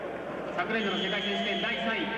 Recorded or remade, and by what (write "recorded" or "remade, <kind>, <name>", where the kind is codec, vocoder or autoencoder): recorded